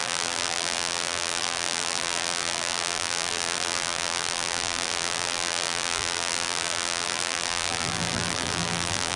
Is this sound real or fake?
fake